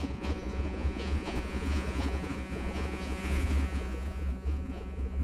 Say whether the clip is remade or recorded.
remade